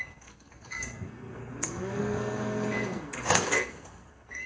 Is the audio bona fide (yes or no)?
no